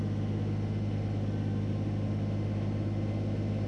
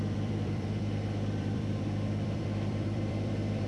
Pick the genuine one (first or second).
first